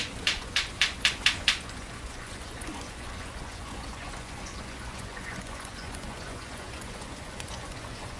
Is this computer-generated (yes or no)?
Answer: yes